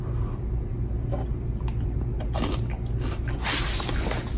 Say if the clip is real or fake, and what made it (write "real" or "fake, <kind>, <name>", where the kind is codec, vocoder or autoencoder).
real